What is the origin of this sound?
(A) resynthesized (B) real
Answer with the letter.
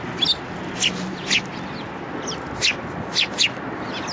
B